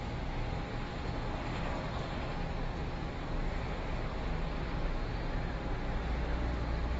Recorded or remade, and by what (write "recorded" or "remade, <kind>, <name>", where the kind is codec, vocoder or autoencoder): recorded